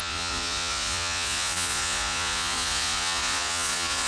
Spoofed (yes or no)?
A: yes